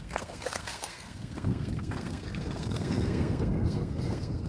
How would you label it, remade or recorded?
remade